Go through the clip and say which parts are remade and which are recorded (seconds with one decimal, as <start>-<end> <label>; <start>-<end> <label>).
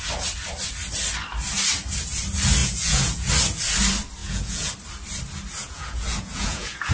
0.0-2.6 recorded; 2.6-3.3 remade; 3.3-4.2 recorded; 4.2-4.7 remade; 4.7-5.6 recorded; 5.6-6.9 remade